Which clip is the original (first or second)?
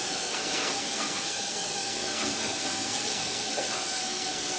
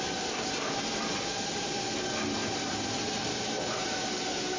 second